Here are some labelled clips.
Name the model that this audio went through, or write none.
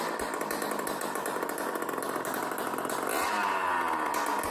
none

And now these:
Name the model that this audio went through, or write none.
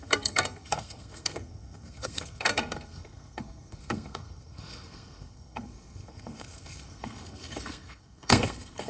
codec, SNAC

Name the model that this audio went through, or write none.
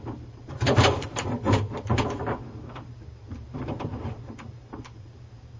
vocoder, BigVGAN v2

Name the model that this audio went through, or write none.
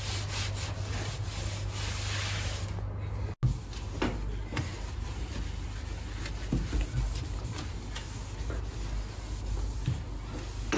none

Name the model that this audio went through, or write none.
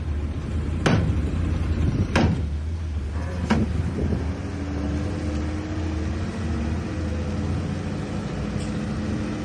none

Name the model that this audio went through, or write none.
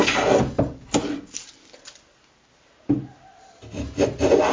none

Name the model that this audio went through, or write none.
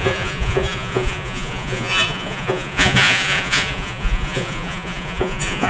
vocoder, Vocos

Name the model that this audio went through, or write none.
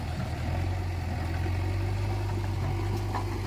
none